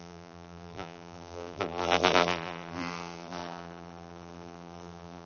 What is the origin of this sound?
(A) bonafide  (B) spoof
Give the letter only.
B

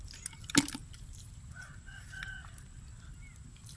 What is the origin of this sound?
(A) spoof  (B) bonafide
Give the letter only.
B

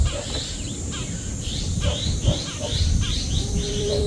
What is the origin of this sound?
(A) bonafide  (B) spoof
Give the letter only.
B